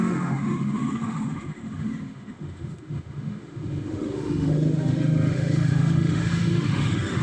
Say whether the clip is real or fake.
fake